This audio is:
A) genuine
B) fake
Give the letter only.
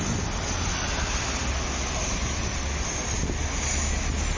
A